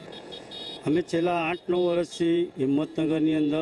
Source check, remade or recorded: remade